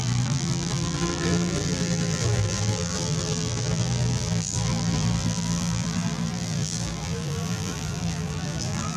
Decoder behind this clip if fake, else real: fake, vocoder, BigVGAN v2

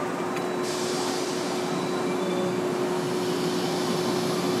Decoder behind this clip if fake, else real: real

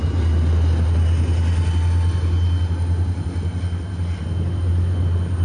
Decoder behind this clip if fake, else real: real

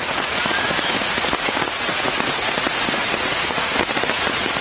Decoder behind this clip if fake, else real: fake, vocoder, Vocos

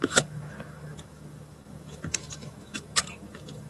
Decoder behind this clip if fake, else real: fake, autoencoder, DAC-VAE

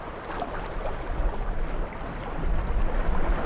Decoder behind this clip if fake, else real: real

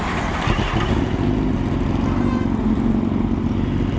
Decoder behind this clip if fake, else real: real